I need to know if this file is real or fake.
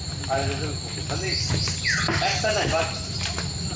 real